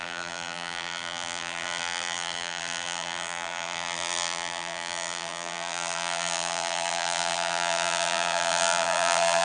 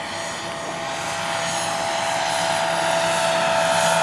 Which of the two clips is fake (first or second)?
first